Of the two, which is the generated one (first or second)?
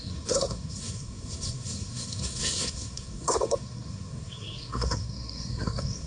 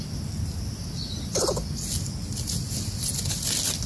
first